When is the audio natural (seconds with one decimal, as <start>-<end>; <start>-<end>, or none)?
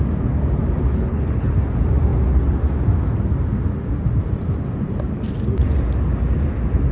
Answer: 0.0-0.9; 1.5-6.9